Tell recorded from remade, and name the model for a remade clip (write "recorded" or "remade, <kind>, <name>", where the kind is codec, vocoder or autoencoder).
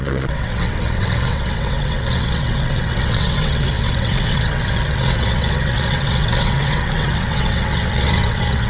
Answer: remade, vocoder, WaveNeXt